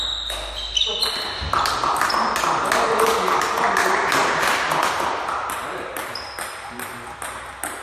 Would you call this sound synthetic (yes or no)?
no